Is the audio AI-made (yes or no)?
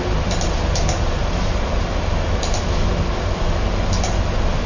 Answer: no